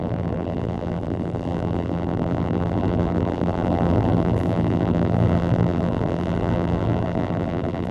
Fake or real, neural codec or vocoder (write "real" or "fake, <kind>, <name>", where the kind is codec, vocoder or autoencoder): fake, vocoder, BigVGAN v2